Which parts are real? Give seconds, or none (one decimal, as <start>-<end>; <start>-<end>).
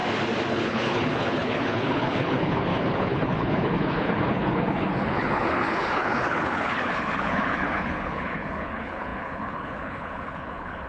0.0-0.5